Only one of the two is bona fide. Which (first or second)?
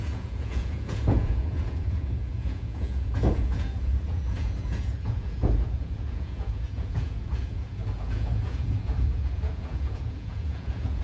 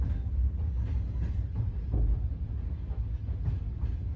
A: second